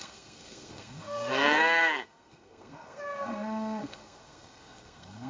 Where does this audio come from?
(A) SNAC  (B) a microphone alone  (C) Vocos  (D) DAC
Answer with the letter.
A